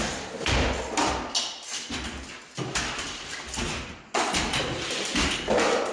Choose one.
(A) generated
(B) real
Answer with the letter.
B